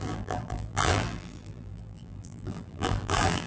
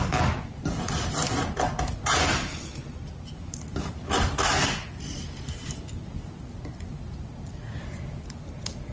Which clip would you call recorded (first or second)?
second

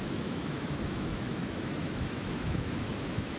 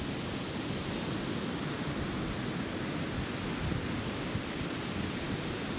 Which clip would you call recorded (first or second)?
second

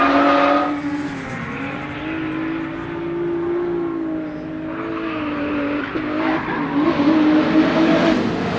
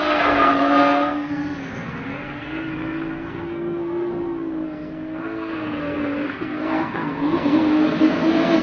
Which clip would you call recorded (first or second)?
first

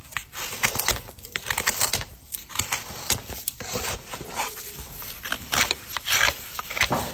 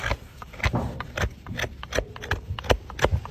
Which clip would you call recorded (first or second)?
second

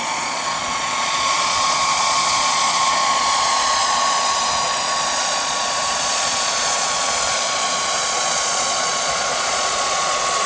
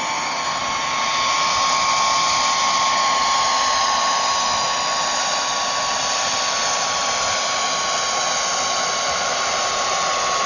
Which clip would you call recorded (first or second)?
second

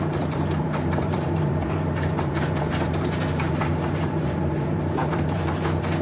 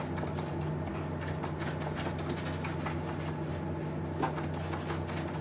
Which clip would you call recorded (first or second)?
second